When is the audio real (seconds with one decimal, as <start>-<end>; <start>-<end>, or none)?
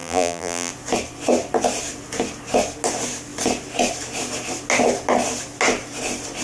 0.7-6.4